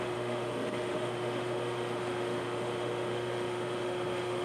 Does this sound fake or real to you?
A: fake